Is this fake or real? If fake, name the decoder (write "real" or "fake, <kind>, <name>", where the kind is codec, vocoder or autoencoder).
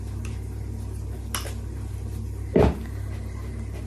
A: real